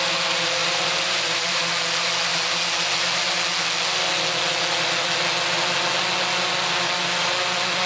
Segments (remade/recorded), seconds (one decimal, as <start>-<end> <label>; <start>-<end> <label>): 0.0-0.6 recorded; 0.6-1.6 remade; 1.6-7.9 recorded